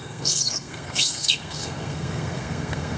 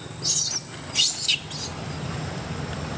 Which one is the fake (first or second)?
first